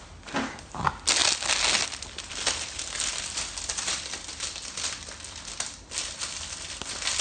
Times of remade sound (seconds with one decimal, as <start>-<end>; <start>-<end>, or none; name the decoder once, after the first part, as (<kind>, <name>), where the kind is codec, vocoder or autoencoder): none